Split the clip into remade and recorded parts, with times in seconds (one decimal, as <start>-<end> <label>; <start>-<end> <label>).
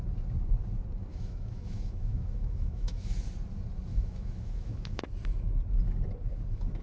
0.0-1.1 recorded; 1.1-3.3 remade; 3.3-3.9 recorded; 3.9-5.0 remade; 5.0-6.8 recorded